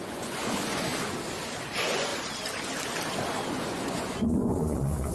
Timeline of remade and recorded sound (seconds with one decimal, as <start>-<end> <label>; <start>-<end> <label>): 0.0-0.9 remade; 0.9-1.7 recorded; 1.7-2.1 remade; 2.1-3.5 recorded; 3.5-5.1 remade